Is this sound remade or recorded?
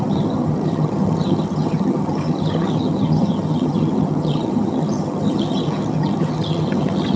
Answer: remade